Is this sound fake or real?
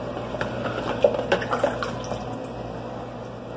real